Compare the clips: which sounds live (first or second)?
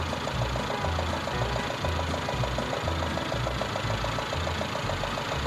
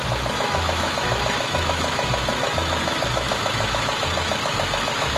first